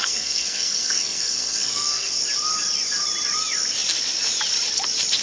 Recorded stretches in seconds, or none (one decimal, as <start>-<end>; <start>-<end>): 2.1-5.2

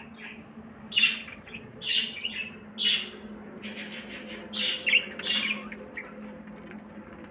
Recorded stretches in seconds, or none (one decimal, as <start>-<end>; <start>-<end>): 0.0-7.3